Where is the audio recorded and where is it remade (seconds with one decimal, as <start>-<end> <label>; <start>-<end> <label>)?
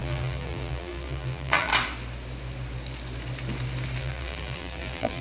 0.0-1.7 remade; 1.7-4.0 recorded; 4.0-5.2 remade